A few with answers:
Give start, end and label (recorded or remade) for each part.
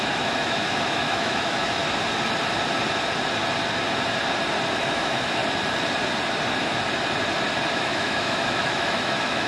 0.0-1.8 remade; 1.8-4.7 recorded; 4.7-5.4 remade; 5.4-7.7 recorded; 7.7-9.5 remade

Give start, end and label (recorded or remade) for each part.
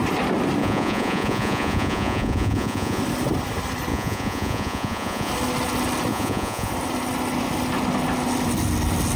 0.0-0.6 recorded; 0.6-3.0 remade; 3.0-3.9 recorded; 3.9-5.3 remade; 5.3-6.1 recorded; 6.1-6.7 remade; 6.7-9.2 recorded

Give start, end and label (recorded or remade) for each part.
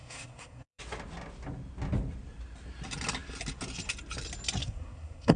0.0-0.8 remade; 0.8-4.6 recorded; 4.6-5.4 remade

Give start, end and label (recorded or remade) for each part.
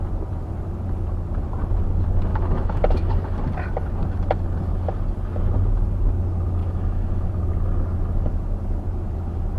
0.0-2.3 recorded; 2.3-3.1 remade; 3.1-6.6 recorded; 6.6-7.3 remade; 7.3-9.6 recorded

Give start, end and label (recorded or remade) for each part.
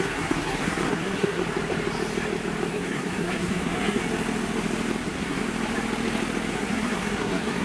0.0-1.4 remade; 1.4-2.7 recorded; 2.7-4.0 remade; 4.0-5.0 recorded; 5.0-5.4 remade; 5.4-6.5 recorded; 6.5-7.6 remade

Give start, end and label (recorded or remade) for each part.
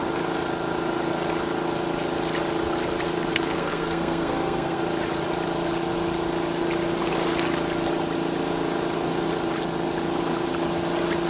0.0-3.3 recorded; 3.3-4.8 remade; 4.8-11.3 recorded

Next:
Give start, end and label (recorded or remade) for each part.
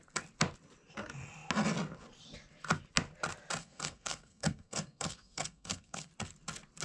0.0-3.6 recorded; 3.6-6.1 remade; 6.1-6.8 recorded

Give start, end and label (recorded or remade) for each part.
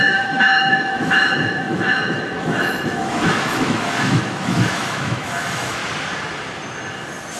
0.0-5.8 remade; 5.8-7.4 recorded